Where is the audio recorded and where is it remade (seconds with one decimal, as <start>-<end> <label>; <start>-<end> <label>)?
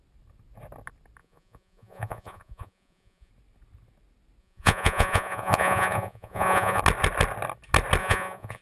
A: 0.0-1.2 recorded; 1.2-3.3 remade; 3.3-4.4 recorded; 4.4-6.8 remade; 6.8-8.0 recorded; 8.0-8.6 remade